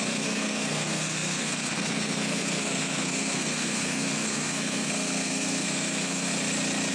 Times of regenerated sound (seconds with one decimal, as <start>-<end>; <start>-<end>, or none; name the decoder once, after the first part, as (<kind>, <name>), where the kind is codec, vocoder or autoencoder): 0.0-6.3 (codec, SNAC)